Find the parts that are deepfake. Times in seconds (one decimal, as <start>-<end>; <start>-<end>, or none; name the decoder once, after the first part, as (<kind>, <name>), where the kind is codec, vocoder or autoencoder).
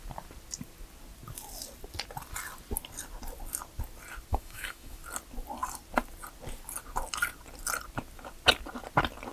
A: 4.3-5.0 (autoencoder, DAC-VAE)